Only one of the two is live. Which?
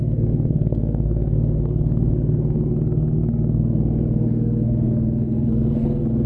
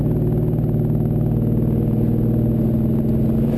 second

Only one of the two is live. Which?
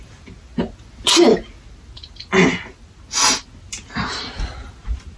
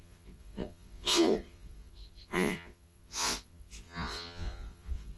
first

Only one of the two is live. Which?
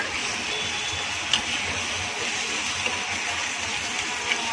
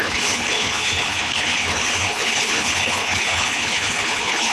first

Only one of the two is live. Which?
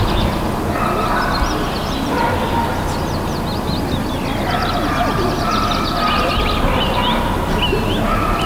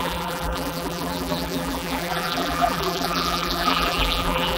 first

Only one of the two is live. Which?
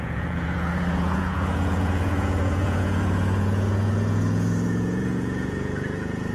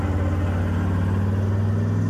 second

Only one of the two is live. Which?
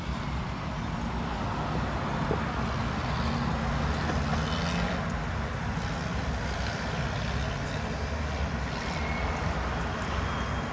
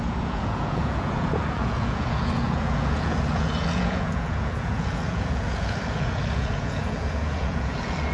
first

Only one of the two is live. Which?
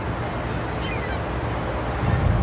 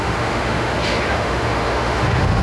first